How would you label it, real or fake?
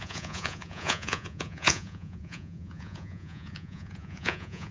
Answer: fake